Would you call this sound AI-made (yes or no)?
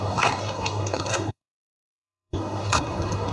yes